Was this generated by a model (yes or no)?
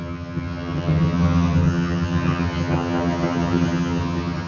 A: yes